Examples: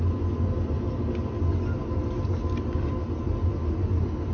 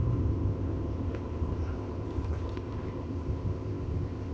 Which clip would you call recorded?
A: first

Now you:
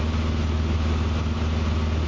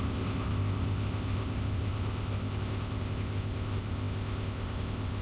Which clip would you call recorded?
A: first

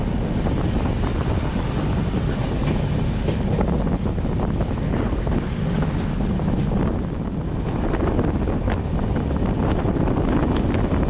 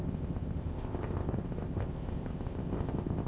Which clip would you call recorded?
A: first